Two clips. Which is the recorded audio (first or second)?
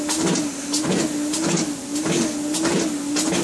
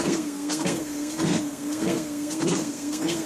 first